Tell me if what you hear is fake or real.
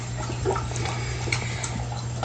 real